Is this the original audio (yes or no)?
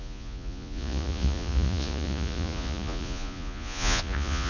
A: no